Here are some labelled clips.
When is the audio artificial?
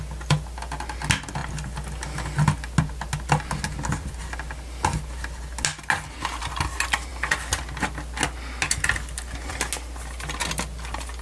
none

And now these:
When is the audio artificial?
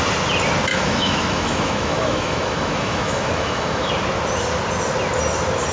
0.7-3.9 (autoencoder, DAC-VAE)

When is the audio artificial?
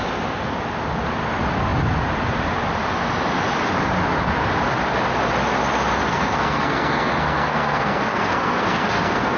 6.1-9.4 (codec, SNAC)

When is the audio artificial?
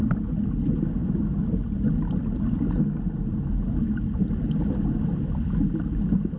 none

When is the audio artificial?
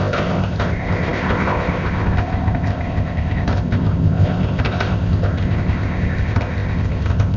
0.0-7.4 (codec, ZipCodec)